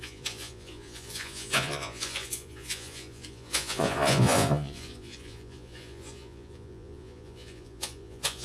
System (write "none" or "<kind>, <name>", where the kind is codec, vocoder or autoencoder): vocoder, Vocos